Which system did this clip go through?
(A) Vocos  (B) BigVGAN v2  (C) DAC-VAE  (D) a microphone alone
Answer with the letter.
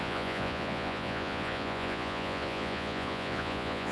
A